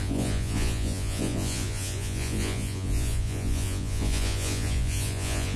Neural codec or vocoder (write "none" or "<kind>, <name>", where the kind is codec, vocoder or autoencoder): vocoder, Vocos